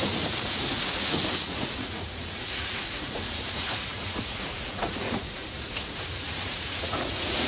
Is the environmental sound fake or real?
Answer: fake